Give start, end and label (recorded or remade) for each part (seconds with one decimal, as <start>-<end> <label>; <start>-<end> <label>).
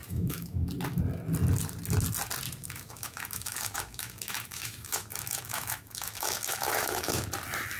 0.0-0.7 remade; 0.7-2.6 recorded; 2.6-7.3 remade; 7.3-7.8 recorded